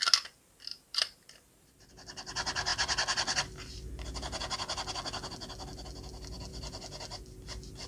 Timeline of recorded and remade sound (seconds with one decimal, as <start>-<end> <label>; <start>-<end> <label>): 0.0-0.7 recorded; 0.7-1.9 remade; 1.9-7.9 recorded